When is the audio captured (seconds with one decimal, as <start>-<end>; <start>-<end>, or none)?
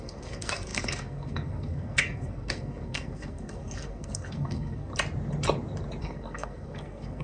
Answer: 4.9-6.0